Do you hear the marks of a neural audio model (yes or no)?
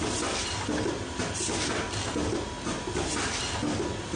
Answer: no